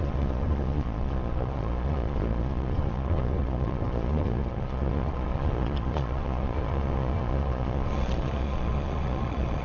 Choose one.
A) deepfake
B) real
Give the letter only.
A